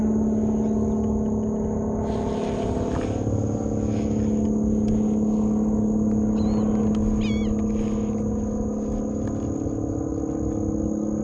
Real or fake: real